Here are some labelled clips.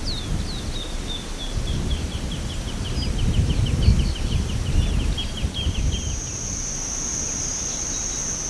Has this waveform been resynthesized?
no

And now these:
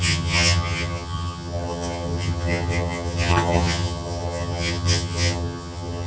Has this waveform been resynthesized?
yes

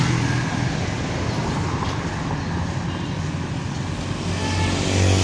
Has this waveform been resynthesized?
no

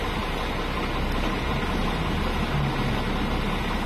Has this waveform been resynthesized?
no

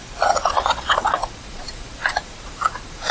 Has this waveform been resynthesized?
yes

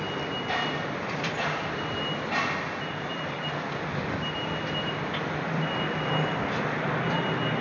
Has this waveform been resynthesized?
yes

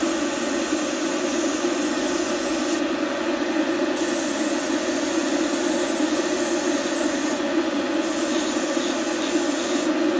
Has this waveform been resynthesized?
yes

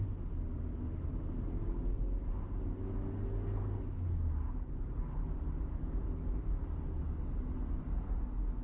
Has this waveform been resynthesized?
no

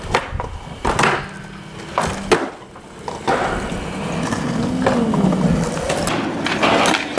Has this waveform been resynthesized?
no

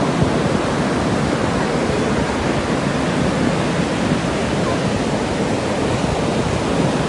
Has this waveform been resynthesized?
no